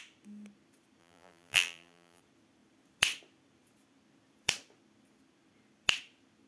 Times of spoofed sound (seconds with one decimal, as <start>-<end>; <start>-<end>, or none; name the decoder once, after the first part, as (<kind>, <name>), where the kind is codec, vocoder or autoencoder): 1.0-2.2 (vocoder, BigVGAN v2)